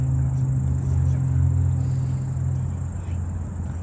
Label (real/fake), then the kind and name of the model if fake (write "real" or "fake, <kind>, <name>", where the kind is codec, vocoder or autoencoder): real